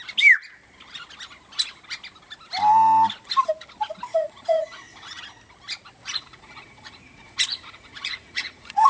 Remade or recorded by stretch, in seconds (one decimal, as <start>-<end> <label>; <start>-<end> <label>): 0.0-4.1 recorded; 4.1-5.2 remade; 5.2-6.0 recorded; 6.0-8.9 remade